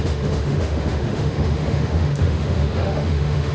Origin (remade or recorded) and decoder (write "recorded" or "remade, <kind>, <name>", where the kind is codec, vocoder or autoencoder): remade, autoencoder, DAC-VAE